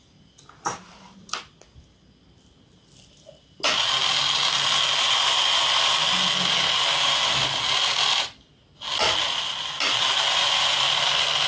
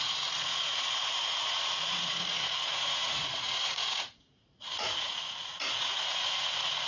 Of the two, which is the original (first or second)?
first